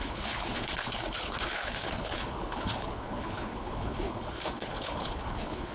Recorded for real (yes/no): no